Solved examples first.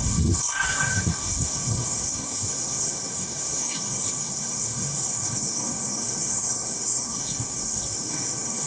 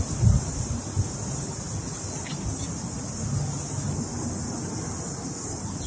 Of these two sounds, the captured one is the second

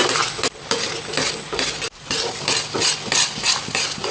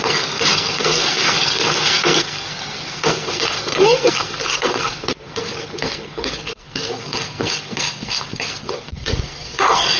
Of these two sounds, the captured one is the first